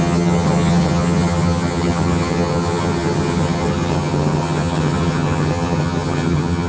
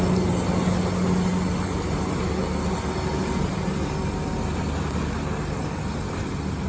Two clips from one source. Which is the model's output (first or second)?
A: first